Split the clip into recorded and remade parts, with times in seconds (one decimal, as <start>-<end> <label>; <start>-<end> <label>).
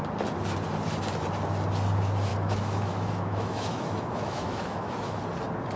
0.0-2.3 recorded; 2.3-5.2 remade; 5.2-5.8 recorded